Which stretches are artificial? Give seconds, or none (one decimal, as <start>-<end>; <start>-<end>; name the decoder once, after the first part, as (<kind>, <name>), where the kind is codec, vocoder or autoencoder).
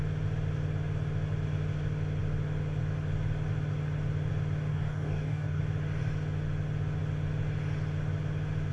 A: 4.7-5.6 (codec, DAC)